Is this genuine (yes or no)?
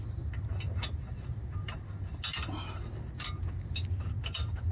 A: yes